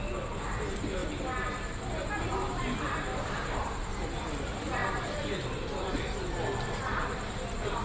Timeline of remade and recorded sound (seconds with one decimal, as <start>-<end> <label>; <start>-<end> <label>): 0.0-3.1 recorded; 3.1-4.1 remade; 4.1-7.8 recorded